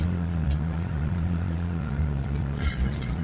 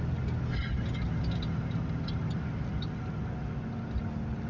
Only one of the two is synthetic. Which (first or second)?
first